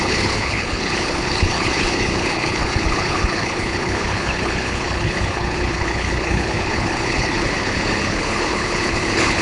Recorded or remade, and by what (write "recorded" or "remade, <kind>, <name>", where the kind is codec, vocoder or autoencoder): remade, codec, HILCodec